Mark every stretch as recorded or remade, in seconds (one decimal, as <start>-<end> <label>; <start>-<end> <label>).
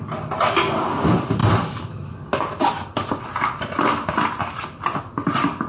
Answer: 0.0-5.7 recorded